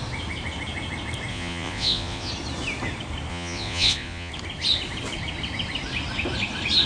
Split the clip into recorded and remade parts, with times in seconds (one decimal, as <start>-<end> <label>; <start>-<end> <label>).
0.0-1.3 recorded; 1.3-2.3 remade; 2.3-3.3 recorded; 3.3-4.3 remade; 4.3-6.9 recorded